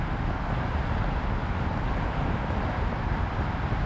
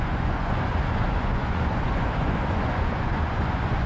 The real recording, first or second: first